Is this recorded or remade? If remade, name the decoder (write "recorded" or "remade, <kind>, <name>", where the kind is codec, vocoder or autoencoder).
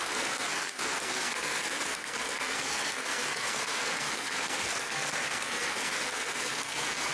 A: remade, codec, SNAC